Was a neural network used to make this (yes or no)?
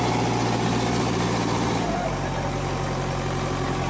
no